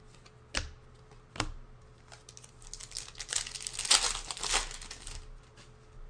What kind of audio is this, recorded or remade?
recorded